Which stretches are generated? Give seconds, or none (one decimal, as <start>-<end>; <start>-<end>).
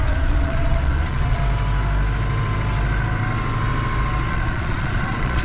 0.0-1.4; 4.3-5.4